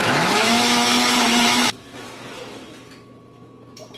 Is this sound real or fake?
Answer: fake